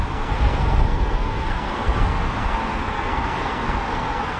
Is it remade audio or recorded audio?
remade